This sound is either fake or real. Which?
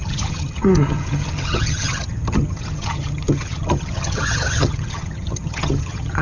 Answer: fake